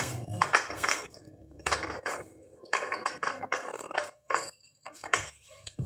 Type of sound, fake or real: fake